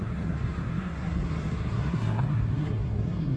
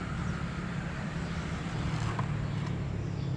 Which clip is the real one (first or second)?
second